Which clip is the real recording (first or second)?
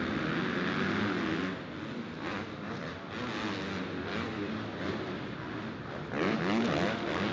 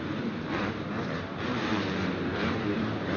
first